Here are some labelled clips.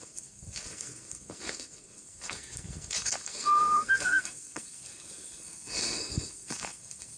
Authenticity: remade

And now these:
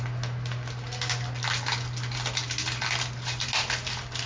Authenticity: recorded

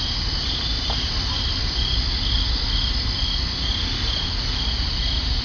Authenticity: recorded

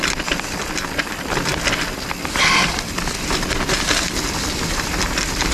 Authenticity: recorded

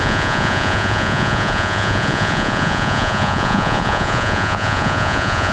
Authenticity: remade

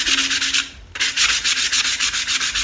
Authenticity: recorded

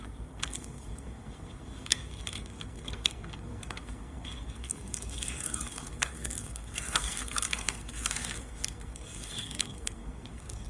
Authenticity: remade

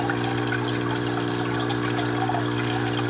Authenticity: recorded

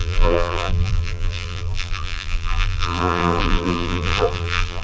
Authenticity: remade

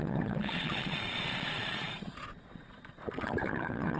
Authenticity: remade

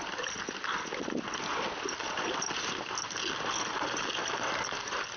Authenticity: recorded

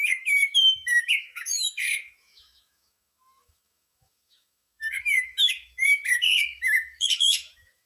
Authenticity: remade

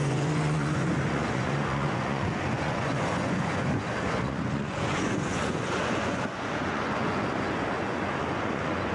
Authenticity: remade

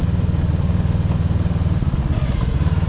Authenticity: recorded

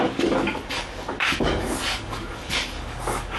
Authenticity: remade